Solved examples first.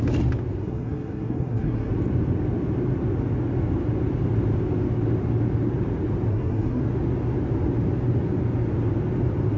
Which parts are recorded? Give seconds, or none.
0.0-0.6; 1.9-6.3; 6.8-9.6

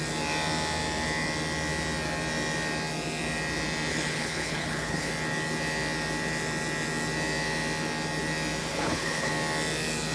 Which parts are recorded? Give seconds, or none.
0.0-3.9; 5.1-8.6; 9.3-10.1